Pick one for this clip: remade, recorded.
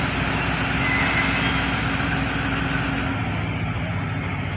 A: recorded